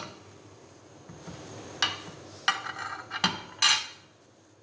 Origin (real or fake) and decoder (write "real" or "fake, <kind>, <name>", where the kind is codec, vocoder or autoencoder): real